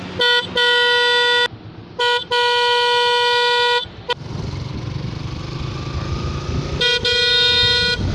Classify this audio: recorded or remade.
recorded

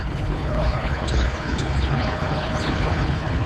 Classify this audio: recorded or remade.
remade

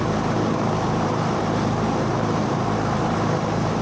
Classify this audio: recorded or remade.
remade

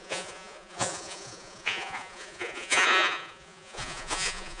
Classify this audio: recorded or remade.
remade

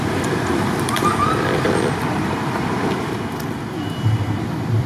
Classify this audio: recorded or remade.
remade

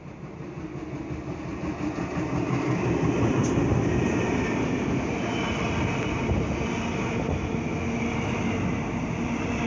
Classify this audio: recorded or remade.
recorded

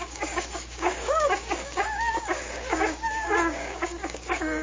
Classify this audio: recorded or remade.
remade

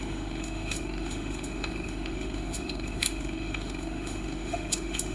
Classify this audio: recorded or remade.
remade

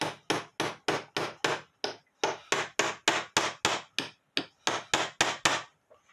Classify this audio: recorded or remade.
recorded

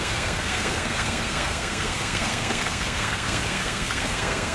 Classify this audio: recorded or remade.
remade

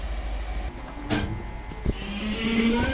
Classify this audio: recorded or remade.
recorded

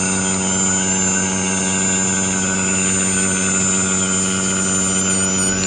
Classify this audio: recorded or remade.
recorded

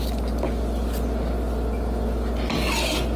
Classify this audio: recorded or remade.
recorded